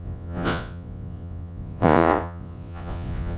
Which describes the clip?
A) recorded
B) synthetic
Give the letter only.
B